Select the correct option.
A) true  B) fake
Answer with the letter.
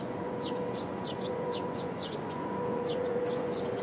B